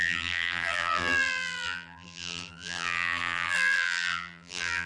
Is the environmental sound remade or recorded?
remade